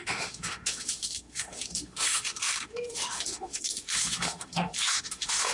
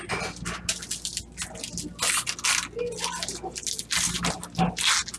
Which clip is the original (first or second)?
second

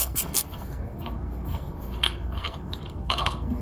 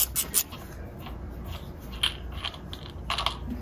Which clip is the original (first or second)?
second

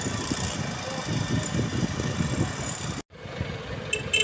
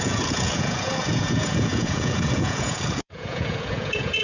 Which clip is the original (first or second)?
first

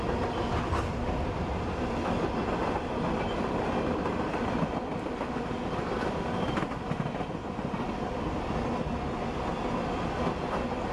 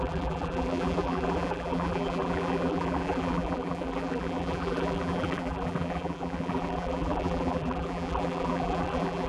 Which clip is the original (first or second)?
first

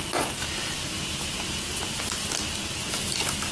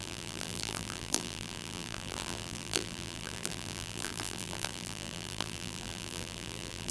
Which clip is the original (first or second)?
first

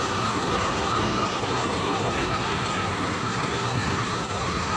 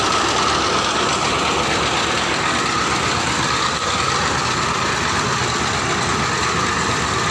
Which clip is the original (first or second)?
second